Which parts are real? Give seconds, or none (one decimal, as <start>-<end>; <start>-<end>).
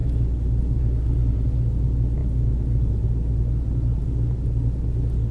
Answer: 0.0-5.3